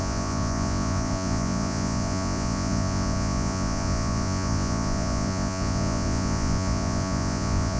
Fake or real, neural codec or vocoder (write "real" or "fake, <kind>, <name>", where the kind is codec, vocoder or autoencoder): fake, vocoder, Vocos